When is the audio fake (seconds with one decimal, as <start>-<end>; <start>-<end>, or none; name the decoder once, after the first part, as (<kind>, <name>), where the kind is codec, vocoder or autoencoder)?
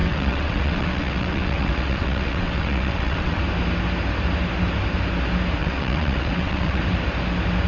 0.0-3.4 (vocoder, WaveNeXt); 5.6-6.8